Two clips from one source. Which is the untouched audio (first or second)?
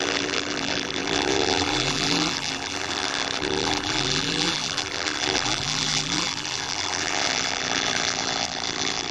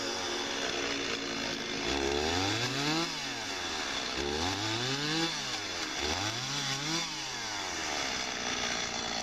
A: second